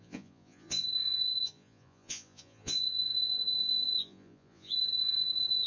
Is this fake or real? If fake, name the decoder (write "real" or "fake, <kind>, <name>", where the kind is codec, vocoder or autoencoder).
fake, vocoder, Vocos